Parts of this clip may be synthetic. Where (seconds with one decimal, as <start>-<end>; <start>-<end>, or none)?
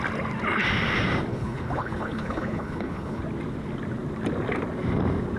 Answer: 1.3-3.2